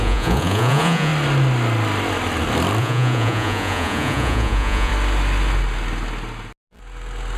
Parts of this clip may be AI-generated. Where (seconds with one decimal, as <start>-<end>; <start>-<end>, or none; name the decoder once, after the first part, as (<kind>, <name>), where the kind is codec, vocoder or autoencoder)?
0.0-1.1 (vocoder, Vocos); 2.8-4.9